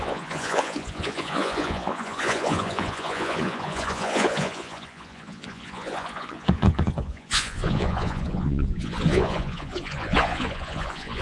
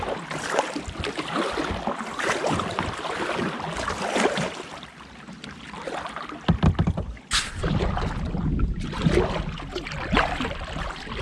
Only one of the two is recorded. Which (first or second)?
second